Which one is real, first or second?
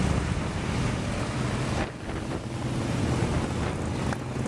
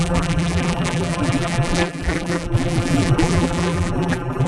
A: first